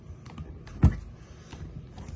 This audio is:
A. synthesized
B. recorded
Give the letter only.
B